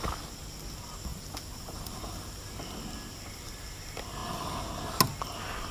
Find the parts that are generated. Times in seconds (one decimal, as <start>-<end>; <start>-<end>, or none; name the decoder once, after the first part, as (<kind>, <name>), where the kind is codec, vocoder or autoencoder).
1.1-2.4 (vocoder, BigVGAN v2)